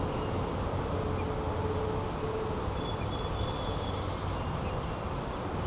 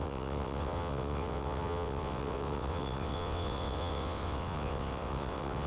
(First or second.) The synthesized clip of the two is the second